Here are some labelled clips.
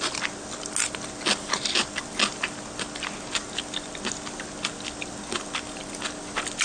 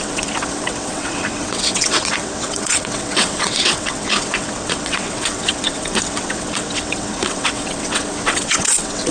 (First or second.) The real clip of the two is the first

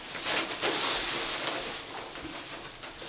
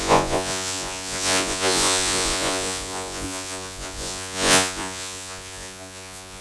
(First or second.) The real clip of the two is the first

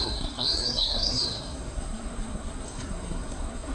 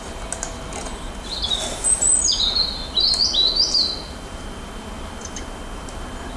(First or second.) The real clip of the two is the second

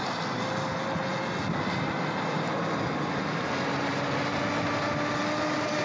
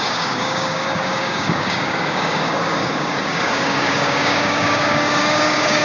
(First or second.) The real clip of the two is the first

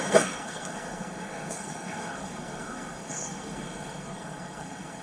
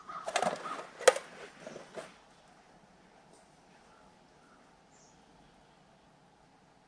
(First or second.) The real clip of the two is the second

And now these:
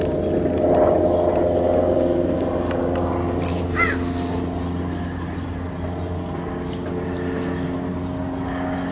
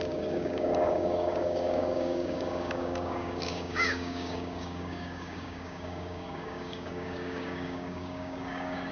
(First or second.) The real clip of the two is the first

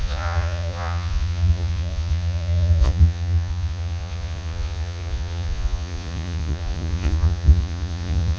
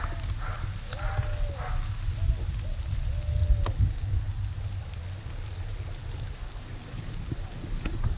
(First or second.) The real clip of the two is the second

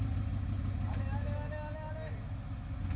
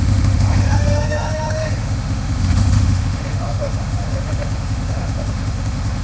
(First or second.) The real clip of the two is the first